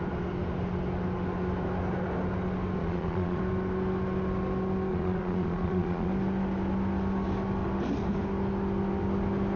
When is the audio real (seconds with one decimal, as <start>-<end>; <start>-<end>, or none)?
0.0-2.8; 3.4-4.9; 6.1-9.6

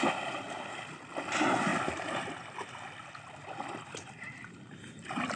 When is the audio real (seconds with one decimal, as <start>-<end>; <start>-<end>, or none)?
0.0-5.4

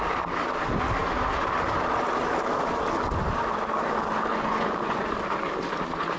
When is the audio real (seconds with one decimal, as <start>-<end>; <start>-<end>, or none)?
0.0-4.3; 5.1-6.2

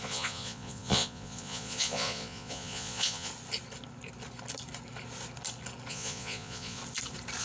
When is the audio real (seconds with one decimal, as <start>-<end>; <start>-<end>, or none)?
3.3-5.9; 6.8-7.4

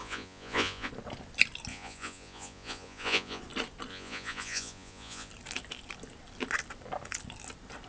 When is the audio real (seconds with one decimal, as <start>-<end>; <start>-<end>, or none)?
0.9-1.7; 3.4-3.9; 5.3-7.9

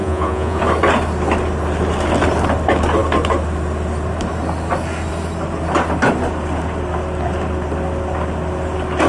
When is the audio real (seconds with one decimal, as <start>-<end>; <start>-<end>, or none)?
0.6-9.1

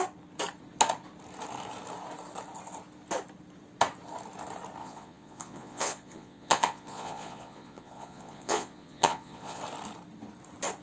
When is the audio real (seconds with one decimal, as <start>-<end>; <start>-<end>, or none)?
0.0-4.8; 9.6-10.8

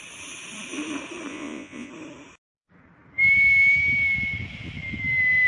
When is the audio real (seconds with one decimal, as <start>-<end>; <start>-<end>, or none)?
0.0-1.3; 1.9-5.5